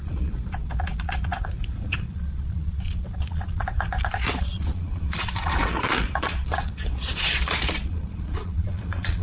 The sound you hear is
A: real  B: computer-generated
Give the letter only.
B